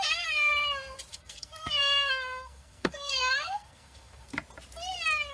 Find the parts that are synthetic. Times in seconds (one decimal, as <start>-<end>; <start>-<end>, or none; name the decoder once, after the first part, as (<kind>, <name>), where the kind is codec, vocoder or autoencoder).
0.0-0.5 (codec, SNAC); 1.1-4.3